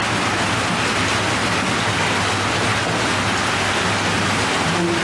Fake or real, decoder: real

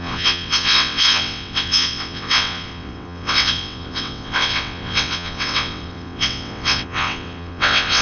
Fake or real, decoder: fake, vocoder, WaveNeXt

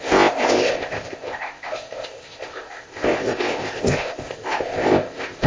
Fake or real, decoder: fake, codec, ZipCodec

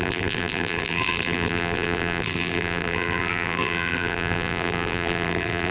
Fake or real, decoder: fake, vocoder, BigVGAN v2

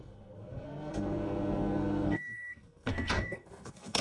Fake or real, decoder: fake, codec, SNAC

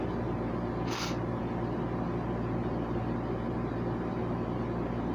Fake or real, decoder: real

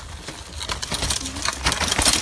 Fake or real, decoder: real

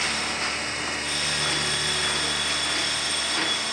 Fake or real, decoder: real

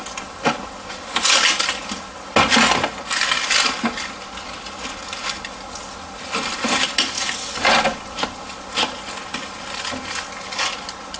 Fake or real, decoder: real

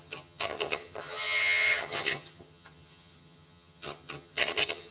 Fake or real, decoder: fake, vocoder, HiFi-GAN